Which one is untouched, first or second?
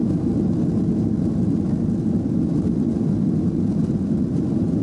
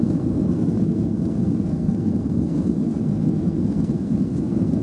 first